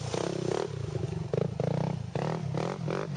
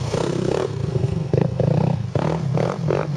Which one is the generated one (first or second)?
second